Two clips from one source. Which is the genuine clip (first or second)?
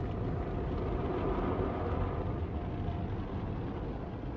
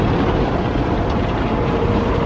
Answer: first